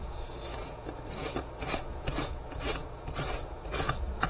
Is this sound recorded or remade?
remade